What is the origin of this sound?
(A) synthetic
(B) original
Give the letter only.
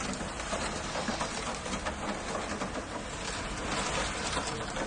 B